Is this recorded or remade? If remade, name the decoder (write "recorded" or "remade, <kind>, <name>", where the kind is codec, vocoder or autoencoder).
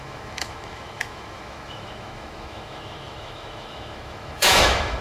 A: remade, autoencoder, DAC-VAE